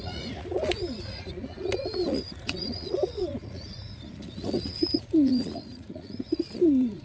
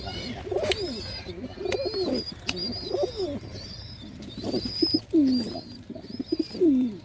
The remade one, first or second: first